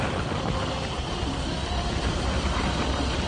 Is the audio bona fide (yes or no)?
yes